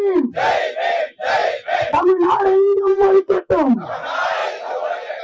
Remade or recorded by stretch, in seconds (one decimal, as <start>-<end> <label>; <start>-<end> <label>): 0.0-1.4 recorded; 1.4-3.5 remade; 3.5-4.4 recorded; 4.4-5.2 remade